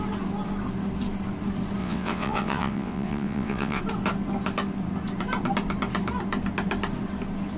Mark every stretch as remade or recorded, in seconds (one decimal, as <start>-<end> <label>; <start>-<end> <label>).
0.0-1.8 recorded; 1.8-3.8 remade; 3.8-7.6 recorded